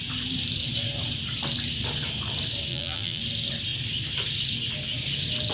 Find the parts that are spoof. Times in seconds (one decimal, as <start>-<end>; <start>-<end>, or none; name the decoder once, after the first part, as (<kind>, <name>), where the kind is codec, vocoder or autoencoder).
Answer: 2.7-3.2 (vocoder, BigVGAN v2)